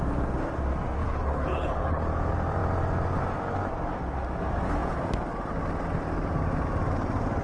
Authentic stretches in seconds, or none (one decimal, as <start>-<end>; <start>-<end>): 0.0-1.0; 2.0-7.4